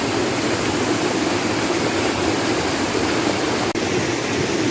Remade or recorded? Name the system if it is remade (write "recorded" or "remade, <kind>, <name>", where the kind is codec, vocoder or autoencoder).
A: recorded